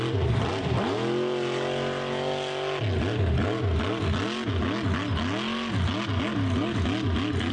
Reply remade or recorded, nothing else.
recorded